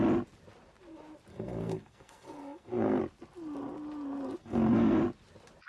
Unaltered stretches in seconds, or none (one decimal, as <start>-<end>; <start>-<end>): 0.0-1.3; 3.0-4.4; 5.0-5.7